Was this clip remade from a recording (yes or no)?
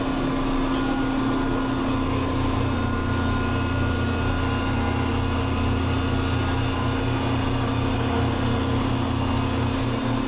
no